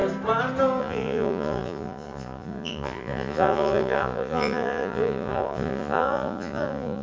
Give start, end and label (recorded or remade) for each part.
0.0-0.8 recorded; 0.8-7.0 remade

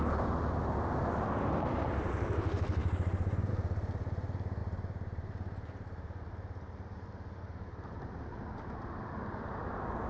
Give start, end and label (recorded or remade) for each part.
0.0-2.8 recorded; 2.8-3.5 remade; 3.5-4.6 recorded; 4.6-8.0 remade; 8.0-10.1 recorded

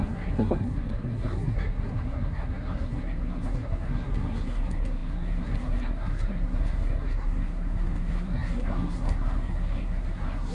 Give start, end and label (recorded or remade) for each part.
0.0-10.5 remade

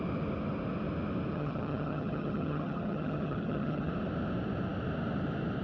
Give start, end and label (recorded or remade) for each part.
0.0-1.3 recorded; 1.3-3.9 remade; 3.9-5.6 recorded

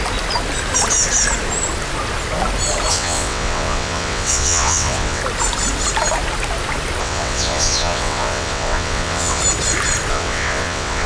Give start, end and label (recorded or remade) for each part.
0.0-2.9 recorded; 2.9-5.2 remade; 5.2-7.0 recorded; 7.0-9.4 remade; 9.4-10.1 recorded; 10.1-11.1 remade

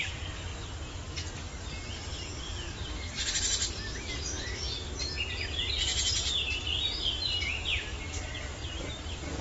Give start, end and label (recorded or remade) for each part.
0.0-9.4 recorded

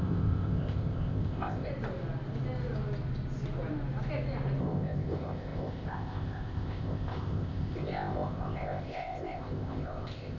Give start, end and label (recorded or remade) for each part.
0.0-1.7 remade; 1.7-4.6 recorded; 4.6-10.4 remade